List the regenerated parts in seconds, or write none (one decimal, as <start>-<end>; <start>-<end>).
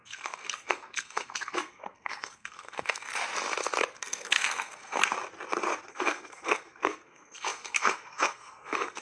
0.0-3.1; 4.0-5.0; 5.9-9.0